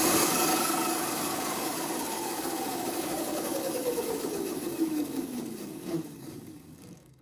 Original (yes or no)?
no